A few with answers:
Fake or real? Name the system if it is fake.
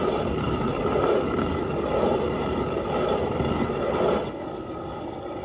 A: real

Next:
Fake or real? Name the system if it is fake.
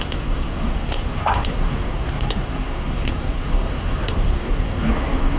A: fake, codec, SNAC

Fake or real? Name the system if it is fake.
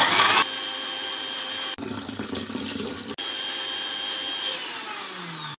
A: real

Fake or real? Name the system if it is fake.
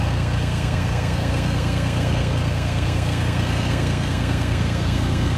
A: fake, codec, SNAC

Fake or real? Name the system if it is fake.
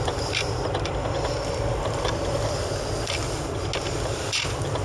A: real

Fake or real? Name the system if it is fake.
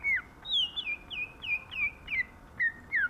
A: real